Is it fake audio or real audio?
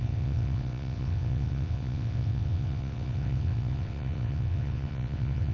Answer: fake